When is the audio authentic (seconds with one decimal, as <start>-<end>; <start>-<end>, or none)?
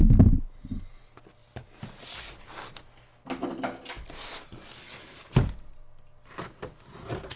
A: 0.0-7.4